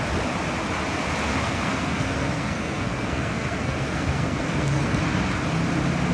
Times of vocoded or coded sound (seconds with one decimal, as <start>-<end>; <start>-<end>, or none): 1.3-5.0